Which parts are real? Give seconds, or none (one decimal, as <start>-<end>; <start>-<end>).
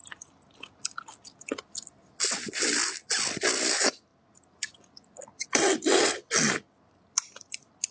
0.0-7.9